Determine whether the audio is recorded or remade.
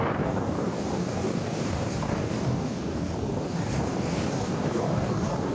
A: remade